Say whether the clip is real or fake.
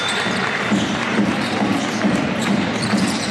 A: fake